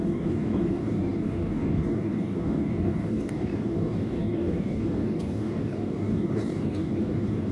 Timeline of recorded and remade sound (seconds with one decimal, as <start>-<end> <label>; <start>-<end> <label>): 0.0-7.5 remade